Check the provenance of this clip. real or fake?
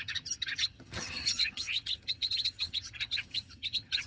fake